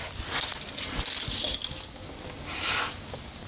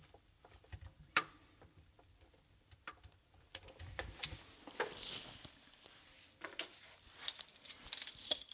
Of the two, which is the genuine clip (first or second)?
first